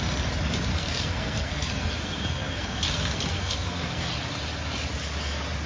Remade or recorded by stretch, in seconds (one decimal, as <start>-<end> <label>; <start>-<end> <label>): 0.0-0.7 recorded; 0.7-4.1 remade; 4.1-5.7 recorded